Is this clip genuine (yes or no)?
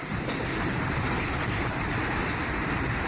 no